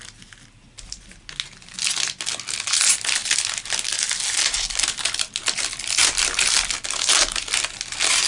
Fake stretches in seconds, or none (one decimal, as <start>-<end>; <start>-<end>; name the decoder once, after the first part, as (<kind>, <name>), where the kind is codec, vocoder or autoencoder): 6.0-6.8 (vocoder, BigVGAN v2)